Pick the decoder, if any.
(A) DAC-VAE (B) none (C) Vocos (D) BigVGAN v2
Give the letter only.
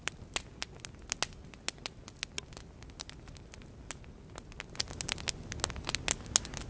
B